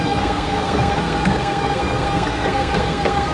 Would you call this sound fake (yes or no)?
yes